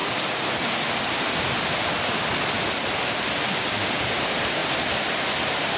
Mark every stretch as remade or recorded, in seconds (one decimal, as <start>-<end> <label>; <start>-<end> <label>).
0.0-1.1 recorded; 1.1-1.7 remade; 1.7-3.7 recorded; 3.7-4.6 remade; 4.6-5.8 recorded